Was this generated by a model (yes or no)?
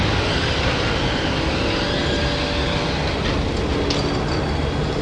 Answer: no